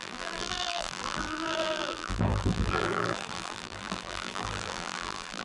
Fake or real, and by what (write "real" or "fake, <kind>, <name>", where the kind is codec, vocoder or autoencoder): fake, vocoder, BigVGAN v2